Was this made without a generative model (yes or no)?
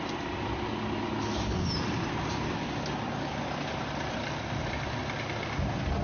yes